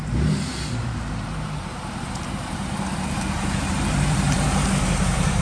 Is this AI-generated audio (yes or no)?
yes